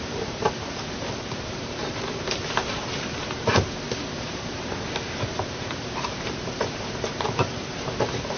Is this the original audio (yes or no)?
no